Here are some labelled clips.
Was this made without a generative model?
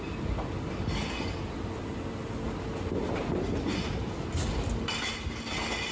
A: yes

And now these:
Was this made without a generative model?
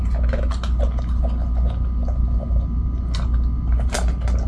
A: yes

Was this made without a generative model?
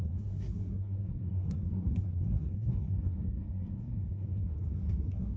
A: no